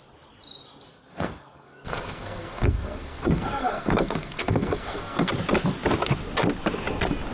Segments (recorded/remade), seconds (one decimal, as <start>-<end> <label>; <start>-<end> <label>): 0.0-0.9 recorded; 0.9-5.3 remade; 5.3-7.3 recorded